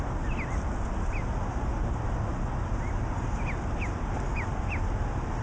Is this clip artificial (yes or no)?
no